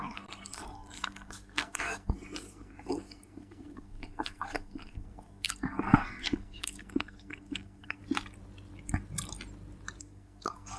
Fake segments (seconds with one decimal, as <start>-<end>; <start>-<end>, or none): 0.0-8.0; 10.0-10.8